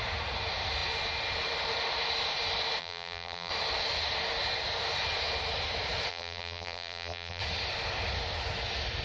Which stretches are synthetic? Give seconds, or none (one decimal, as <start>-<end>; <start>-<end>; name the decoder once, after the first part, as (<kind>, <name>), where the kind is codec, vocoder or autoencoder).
2.8-3.5 (vocoder, BigVGAN v2); 6.1-7.4